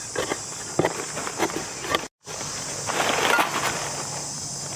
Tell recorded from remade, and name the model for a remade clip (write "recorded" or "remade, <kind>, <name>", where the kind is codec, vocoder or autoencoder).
recorded